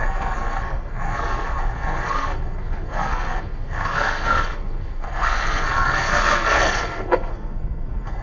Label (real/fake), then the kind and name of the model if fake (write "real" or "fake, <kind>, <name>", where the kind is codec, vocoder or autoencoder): fake, codec, SNAC